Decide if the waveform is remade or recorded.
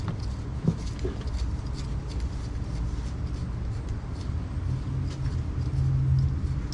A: recorded